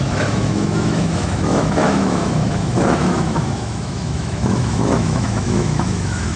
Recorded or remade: remade